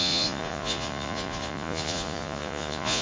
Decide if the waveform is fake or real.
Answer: fake